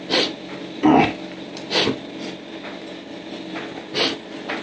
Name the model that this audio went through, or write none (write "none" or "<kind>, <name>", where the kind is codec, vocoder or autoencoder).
none